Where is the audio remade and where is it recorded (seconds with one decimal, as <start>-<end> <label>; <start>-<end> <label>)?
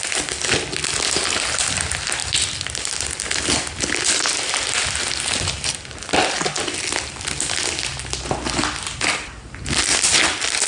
0.0-10.7 recorded